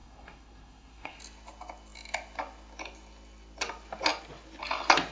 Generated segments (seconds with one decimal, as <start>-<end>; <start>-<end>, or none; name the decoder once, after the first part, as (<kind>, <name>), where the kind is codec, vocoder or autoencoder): 0.0-1.2 (codec, SNAC)